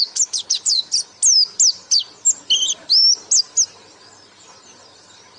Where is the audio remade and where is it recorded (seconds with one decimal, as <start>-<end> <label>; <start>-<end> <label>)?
0.0-5.4 recorded